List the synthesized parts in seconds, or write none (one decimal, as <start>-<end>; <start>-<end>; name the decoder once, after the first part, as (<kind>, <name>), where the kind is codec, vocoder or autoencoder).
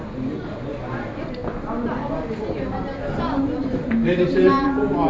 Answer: none